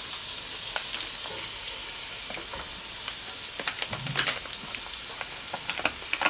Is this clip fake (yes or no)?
no